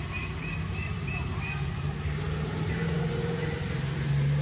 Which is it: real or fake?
real